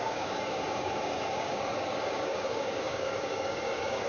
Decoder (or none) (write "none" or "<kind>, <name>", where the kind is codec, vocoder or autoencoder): codec, DAC